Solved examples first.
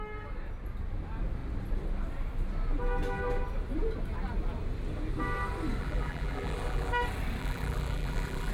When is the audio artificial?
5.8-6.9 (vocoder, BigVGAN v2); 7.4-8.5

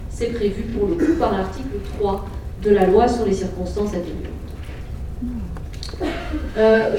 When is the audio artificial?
6.2-7.0 (autoencoder, DAC-VAE)